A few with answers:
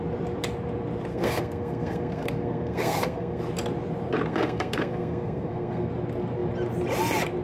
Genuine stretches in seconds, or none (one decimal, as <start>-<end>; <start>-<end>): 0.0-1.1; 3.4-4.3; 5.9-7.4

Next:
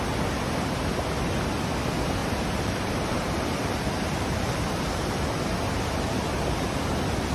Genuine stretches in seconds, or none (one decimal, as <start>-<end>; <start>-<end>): 0.0-2.2; 5.2-7.3

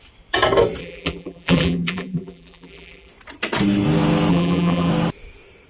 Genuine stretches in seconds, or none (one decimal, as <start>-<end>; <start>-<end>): 0.0-0.8; 3.1-4.3; 4.9-5.7

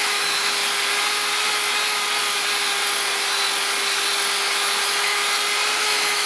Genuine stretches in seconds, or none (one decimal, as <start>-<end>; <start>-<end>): 0.6-4.4; 5.2-5.8

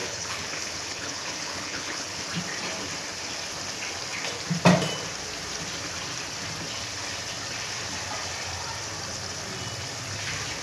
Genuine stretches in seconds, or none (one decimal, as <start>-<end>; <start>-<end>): 2.2-10.6

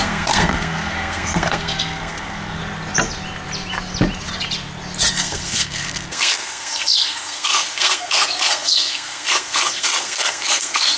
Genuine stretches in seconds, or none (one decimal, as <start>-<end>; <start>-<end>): 2.6-5.1

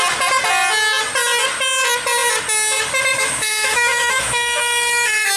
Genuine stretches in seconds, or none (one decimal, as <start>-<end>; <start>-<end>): 0.0-3.1

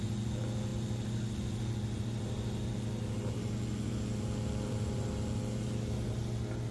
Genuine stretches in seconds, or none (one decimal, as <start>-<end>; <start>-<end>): 0.0-6.7